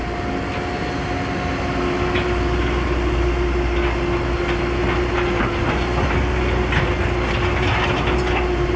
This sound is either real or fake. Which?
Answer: real